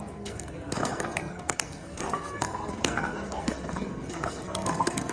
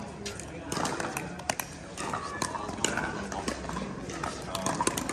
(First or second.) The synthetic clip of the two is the first